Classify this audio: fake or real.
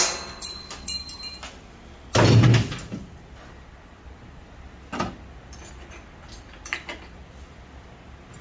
real